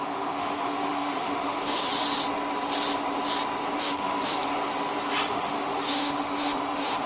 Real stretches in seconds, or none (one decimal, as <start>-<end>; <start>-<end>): 1.8-3.8; 4.4-5.3